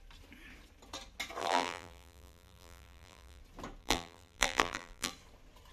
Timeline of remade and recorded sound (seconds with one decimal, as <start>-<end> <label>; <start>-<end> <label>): 0.0-1.4 recorded; 1.4-3.4 remade; 3.4-3.8 recorded; 3.8-5.1 remade; 5.1-5.7 recorded